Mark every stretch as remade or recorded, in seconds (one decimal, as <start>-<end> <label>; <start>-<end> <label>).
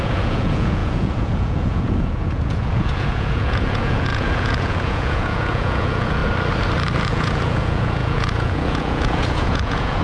0.0-6.2 remade; 6.2-7.1 recorded; 7.1-10.0 remade